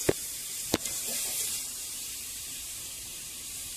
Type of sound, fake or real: fake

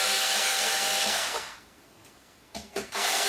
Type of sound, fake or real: fake